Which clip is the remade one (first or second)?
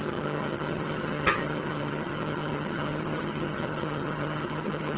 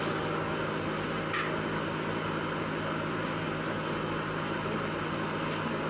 first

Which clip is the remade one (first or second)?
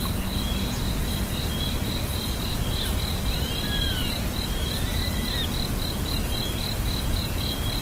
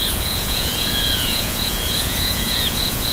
second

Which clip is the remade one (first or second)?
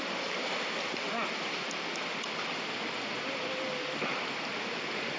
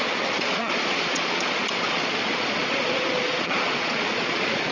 second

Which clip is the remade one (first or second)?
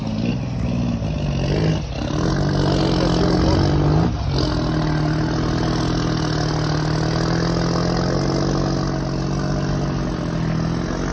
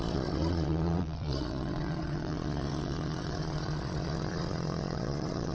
second